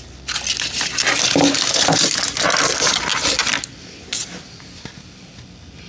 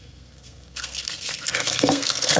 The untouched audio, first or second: first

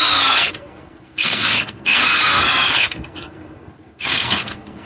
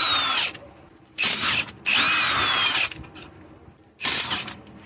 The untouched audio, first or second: second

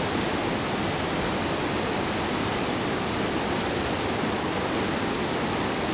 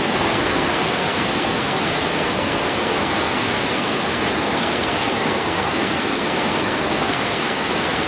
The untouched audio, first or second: first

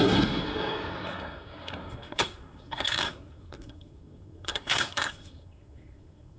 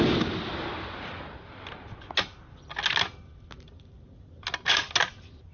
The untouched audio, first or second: second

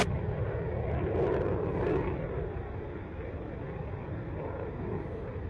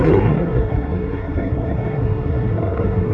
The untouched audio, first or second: first